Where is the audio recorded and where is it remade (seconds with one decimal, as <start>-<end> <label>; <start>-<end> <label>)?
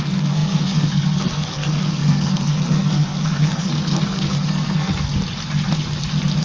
0.0-5.1 remade; 5.1-6.4 recorded